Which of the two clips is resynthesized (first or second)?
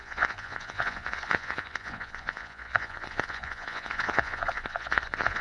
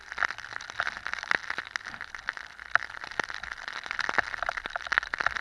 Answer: first